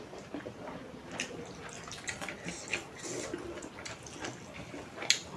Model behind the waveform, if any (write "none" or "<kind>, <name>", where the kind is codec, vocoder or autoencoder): none